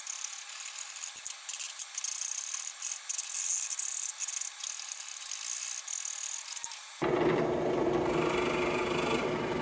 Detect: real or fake real